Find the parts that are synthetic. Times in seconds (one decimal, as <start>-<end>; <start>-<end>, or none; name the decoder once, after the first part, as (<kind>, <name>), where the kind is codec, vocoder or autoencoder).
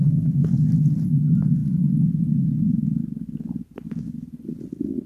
none